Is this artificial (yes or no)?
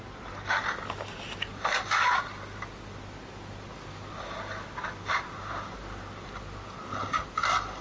no